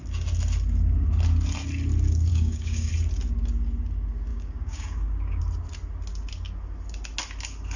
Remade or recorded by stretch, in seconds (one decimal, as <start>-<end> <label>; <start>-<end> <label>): 0.0-2.3 recorded; 2.3-2.9 remade; 2.9-4.3 recorded; 4.3-5.4 remade; 5.4-7.8 recorded